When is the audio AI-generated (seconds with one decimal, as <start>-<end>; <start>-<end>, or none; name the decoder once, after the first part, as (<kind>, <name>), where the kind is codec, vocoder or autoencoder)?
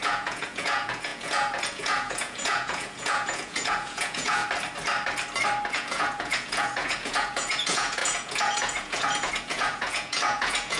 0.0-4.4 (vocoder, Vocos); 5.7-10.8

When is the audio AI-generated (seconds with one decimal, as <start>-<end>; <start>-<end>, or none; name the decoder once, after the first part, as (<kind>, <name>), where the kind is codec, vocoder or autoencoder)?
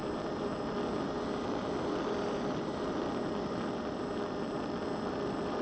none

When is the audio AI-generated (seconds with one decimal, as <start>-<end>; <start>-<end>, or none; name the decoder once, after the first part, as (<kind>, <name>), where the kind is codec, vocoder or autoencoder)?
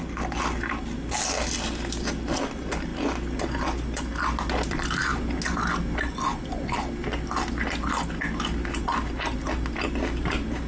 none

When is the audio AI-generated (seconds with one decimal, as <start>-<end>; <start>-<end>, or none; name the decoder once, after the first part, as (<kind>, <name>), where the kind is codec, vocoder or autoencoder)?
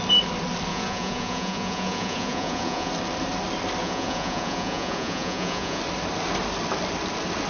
0.7-2.9 (vocoder, Vocos); 3.8-5.8